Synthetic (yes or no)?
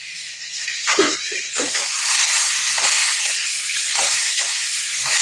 yes